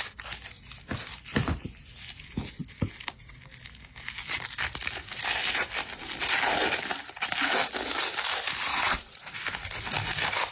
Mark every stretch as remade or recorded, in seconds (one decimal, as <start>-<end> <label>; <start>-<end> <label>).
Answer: 0.0-8.7 recorded; 8.7-9.3 remade; 9.3-10.5 recorded